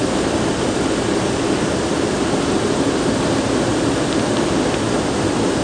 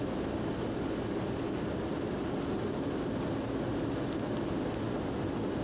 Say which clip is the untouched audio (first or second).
second